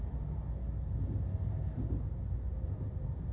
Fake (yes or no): no